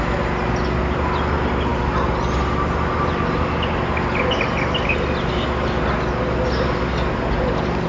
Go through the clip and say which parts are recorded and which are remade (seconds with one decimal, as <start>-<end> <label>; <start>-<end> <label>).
0.0-7.9 recorded